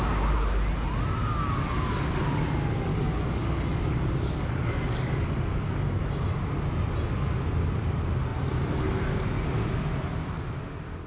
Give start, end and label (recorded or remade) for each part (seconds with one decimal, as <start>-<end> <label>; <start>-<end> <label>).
0.0-2.9 recorded; 2.9-6.0 remade; 6.0-11.1 recorded